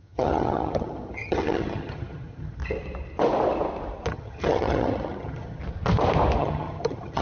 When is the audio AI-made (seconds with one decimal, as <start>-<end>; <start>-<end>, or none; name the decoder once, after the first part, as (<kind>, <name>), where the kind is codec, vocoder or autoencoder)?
0.0-2.6 (vocoder, HiFi-GAN); 4.1-5.6; 6.4-7.2